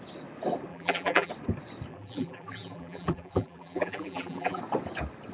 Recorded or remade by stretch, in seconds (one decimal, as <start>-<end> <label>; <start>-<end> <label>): 0.0-0.7 recorded; 0.7-1.3 remade; 1.3-1.9 recorded; 1.9-4.6 remade; 4.6-5.3 recorded

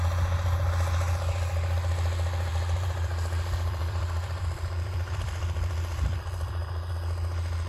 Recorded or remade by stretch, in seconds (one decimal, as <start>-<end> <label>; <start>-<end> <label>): 0.0-2.5 recorded; 2.5-6.9 remade; 6.9-7.7 recorded

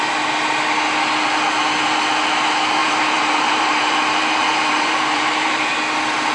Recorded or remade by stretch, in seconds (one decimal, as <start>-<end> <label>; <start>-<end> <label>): 0.0-2.8 recorded; 2.8-5.6 remade; 5.6-6.3 recorded

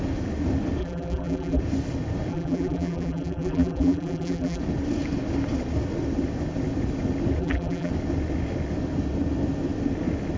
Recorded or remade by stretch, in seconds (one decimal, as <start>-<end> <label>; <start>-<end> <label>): 0.0-0.8 recorded; 0.8-1.6 remade; 1.6-2.3 recorded; 2.3-4.6 remade; 4.6-7.4 recorded; 7.4-7.9 remade; 7.9-10.4 recorded